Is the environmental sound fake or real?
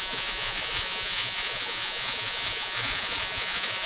fake